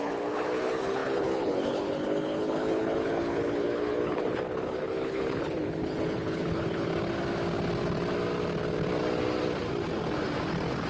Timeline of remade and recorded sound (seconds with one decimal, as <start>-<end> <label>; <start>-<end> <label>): 0.0-6.9 remade; 6.9-10.9 recorded